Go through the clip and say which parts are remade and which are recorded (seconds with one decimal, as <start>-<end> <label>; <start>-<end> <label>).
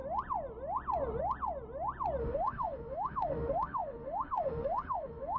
0.0-2.2 recorded; 2.2-5.4 remade